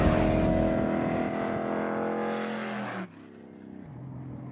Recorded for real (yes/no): yes